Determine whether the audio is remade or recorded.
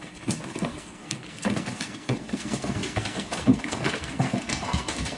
remade